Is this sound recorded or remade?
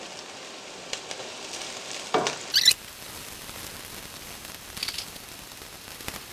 recorded